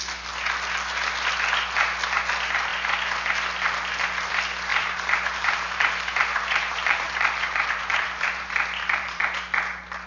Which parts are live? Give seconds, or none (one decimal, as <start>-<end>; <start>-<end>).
0.0-4.7; 9.2-10.1